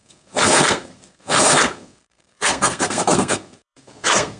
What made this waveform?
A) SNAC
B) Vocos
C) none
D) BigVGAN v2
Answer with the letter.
A